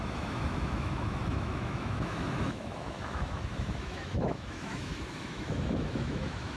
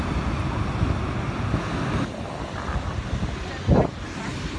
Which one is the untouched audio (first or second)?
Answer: second